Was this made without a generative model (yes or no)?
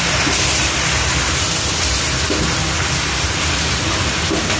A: yes